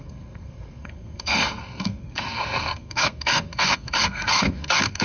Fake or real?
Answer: fake